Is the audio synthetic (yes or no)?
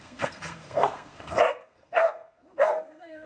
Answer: yes